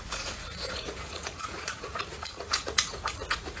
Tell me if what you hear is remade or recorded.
remade